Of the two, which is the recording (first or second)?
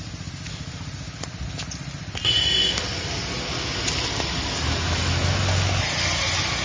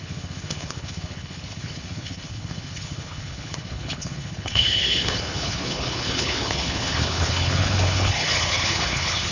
first